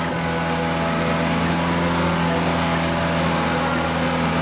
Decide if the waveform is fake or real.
real